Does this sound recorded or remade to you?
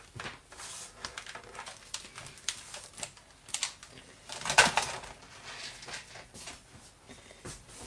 recorded